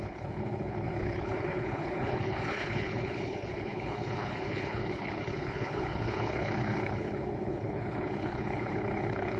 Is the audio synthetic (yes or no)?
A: yes